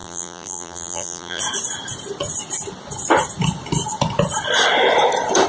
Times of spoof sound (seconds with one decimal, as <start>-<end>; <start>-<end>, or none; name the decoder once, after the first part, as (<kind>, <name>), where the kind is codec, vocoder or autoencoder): 0.0-1.4 (vocoder, BigVGAN v2)